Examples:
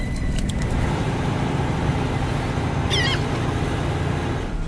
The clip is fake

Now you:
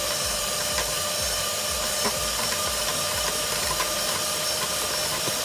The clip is fake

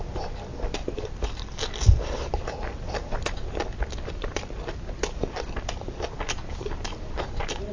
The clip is fake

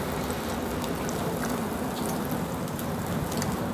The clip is real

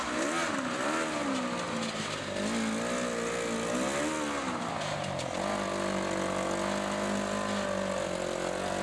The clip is real